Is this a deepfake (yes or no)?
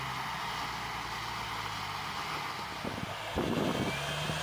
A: no